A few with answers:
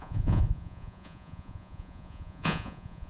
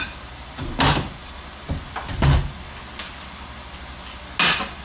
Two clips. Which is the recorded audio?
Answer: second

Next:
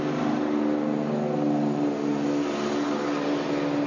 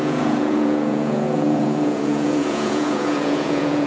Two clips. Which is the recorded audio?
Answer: first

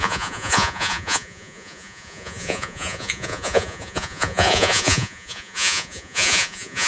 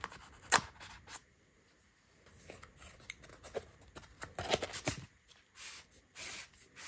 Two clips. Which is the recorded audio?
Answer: second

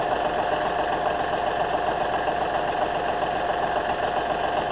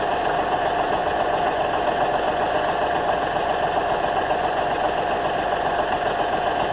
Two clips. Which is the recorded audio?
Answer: first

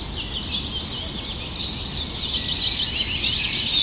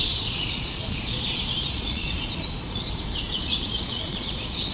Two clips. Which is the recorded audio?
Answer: first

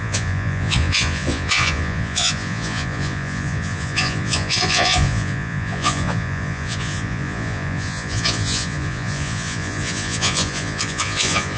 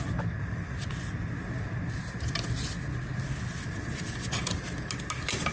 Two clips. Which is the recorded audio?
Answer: second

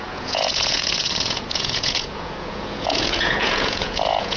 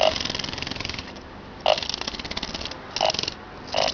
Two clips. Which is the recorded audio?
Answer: second